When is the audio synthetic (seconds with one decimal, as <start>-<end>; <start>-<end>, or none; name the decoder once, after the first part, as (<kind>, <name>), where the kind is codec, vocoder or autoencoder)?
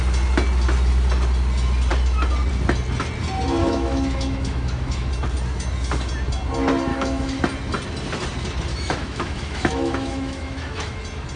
3.6-5.1 (autoencoder, DAC-VAE); 6.9-7.4; 8.7-11.0